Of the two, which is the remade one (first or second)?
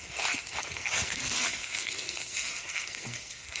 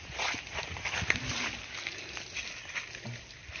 first